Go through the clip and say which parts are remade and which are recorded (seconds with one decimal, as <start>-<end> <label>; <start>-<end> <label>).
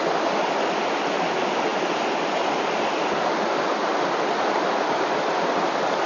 0.0-6.1 recorded